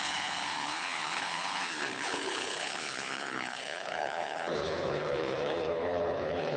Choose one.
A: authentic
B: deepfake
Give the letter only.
B